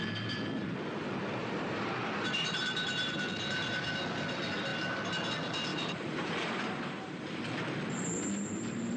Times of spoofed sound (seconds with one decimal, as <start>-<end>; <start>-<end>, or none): 1.4-3.2; 5.7-7.2